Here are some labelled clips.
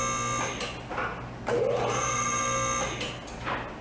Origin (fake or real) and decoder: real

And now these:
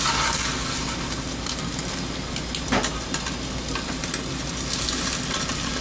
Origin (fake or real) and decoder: real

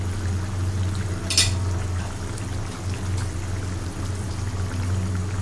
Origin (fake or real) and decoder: real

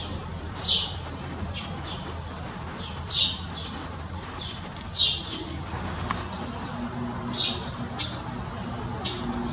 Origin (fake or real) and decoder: real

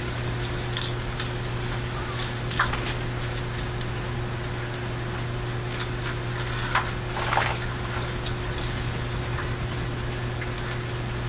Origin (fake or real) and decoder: real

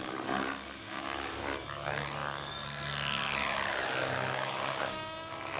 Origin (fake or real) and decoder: fake, codec, DAC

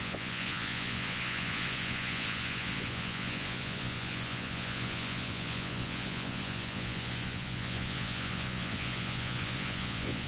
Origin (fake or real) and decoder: fake, vocoder, Vocos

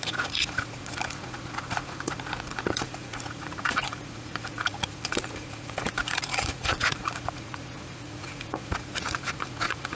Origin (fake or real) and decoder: fake, vocoder, Vocos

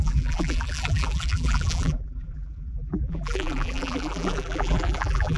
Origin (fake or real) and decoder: fake, vocoder, BigVGAN v2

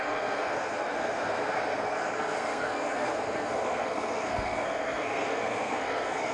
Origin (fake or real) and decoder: fake, codec, SNAC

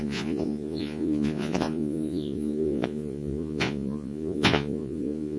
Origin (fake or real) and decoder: fake, vocoder, Vocos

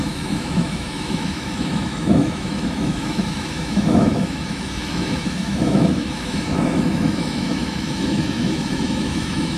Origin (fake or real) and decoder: fake, autoencoder, DAC-VAE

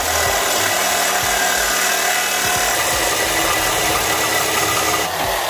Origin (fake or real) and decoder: real